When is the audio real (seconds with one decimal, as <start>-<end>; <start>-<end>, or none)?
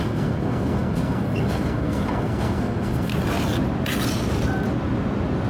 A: 3.1-5.5